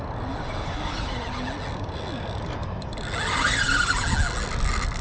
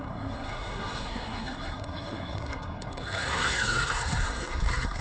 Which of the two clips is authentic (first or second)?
first